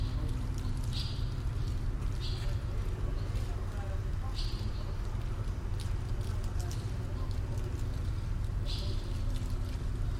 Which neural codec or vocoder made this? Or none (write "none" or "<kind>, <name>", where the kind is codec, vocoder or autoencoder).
none